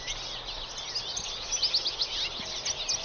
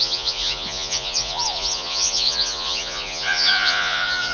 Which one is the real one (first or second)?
first